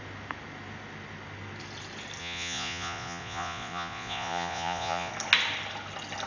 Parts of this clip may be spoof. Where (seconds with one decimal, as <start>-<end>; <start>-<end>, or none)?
2.2-5.1